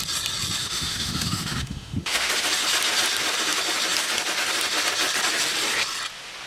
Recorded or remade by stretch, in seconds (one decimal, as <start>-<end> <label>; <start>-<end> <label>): 0.0-0.6 recorded; 0.6-2.3 remade; 2.3-6.5 recorded